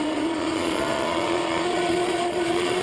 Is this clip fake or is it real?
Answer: fake